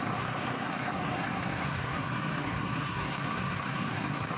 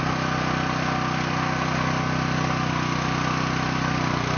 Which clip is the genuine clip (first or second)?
second